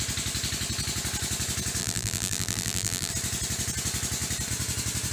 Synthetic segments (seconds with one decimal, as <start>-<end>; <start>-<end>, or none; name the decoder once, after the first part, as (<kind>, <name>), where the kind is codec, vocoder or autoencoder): 1.8-3.1 (vocoder, BigVGAN v2)